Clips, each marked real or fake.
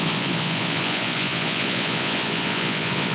fake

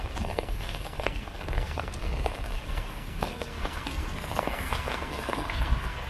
fake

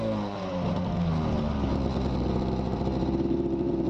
fake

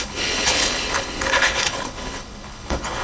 fake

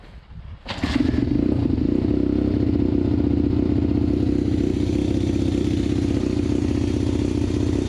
real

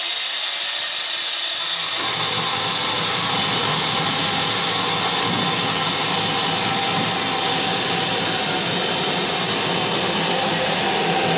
real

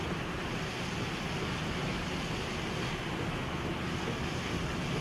real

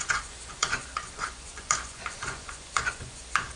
fake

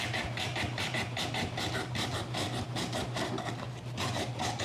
fake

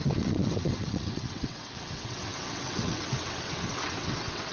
fake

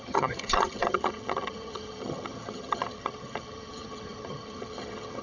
fake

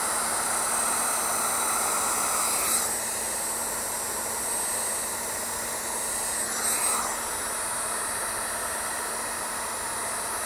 real